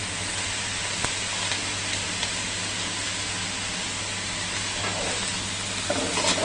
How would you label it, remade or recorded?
recorded